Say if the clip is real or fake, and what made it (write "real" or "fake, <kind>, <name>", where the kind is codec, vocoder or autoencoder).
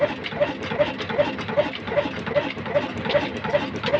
real